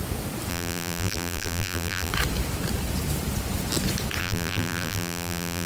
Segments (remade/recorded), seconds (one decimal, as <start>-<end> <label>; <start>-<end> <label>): 0.0-0.5 recorded; 0.5-2.1 remade; 2.1-4.2 recorded; 4.2-5.7 remade